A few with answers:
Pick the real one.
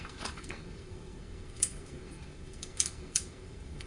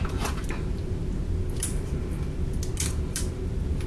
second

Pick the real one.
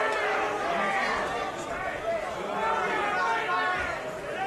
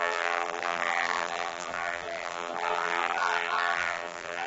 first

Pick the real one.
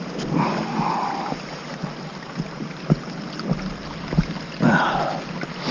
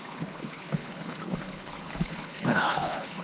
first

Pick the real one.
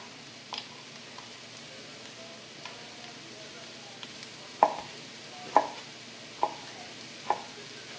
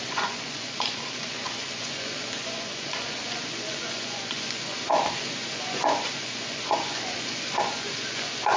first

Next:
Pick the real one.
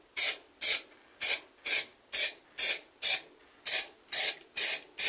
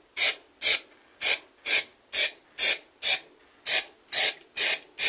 second